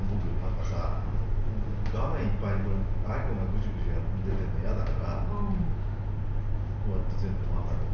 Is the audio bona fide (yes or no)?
yes